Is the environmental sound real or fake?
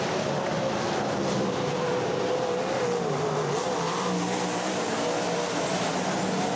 real